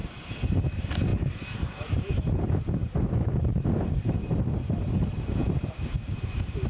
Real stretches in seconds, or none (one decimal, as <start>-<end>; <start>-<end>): 0.6-1.1; 2.1-2.8; 4.9-5.4; 5.9-6.7